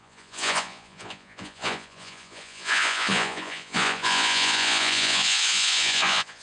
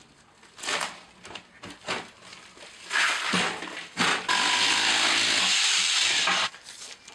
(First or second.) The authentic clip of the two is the second